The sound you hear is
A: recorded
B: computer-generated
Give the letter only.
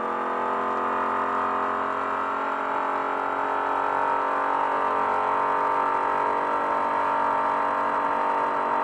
A